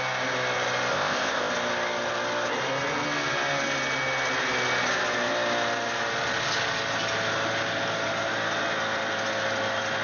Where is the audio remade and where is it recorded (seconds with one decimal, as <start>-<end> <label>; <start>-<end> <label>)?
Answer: 0.0-0.9 recorded; 0.9-1.5 remade; 1.5-10.0 recorded